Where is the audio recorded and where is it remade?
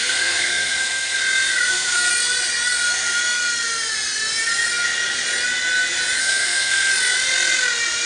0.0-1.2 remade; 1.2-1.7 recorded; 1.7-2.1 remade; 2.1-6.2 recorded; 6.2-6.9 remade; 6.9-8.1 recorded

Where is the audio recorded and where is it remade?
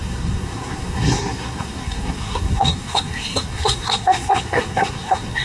0.0-5.4 remade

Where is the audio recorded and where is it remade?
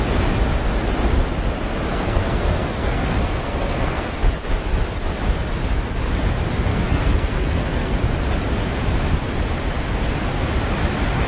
0.0-1.9 recorded; 1.9-4.2 remade; 4.2-6.7 recorded; 6.7-8.0 remade; 8.0-11.3 recorded